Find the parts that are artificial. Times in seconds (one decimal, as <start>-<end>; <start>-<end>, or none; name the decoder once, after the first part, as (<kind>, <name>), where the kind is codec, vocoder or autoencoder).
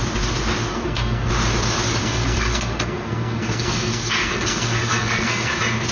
0.7-1.3 (codec, SNAC); 2.0-5.5